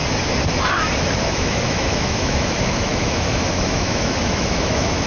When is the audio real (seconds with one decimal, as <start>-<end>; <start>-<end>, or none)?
0.0-1.2

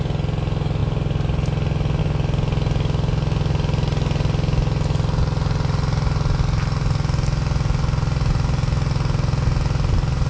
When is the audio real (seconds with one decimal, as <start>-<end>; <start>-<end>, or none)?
0.0-10.3

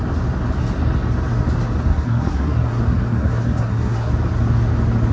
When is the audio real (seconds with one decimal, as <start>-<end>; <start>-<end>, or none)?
0.0-1.9; 4.1-5.1

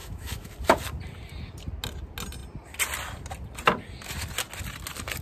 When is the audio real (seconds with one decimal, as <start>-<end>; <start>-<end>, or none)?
0.5-5.2

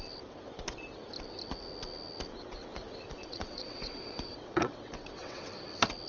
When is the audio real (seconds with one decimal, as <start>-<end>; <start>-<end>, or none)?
0.0-2.3; 5.4-6.1

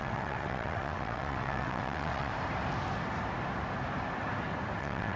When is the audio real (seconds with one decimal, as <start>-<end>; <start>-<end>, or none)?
2.3-4.8

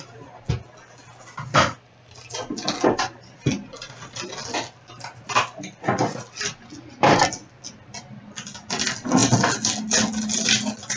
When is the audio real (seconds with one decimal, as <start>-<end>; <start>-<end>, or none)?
0.0-11.0